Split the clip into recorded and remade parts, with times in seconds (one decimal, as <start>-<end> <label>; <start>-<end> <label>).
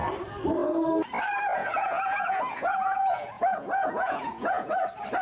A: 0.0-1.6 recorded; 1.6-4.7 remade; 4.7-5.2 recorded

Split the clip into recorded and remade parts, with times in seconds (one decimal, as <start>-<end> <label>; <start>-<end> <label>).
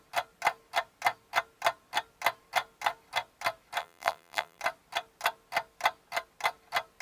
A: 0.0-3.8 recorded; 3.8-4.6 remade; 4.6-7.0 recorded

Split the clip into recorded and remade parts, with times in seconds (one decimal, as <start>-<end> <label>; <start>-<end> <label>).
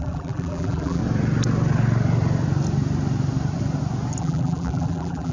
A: 0.0-1.0 remade; 1.0-4.2 recorded; 4.2-5.3 remade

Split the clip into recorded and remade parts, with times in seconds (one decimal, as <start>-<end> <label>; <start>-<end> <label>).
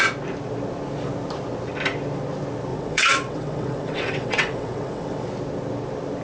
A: 0.0-2.7 recorded; 2.7-5.3 remade; 5.3-6.2 recorded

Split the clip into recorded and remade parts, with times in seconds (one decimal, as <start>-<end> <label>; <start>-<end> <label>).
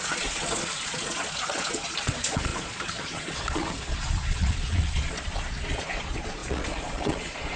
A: 0.0-7.6 remade